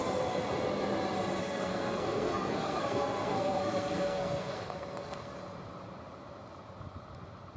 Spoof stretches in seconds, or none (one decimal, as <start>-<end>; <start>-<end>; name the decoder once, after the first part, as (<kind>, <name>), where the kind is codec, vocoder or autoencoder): 1.4-5.3 (codec, SNAC)